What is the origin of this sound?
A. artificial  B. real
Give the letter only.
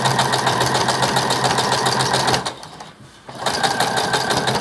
B